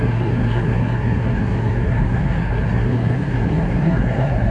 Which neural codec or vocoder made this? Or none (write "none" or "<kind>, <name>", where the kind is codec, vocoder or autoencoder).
codec, SNAC